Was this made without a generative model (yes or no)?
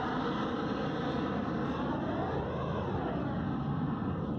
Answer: yes